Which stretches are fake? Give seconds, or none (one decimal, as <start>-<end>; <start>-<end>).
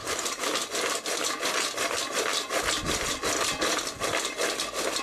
0.0-0.5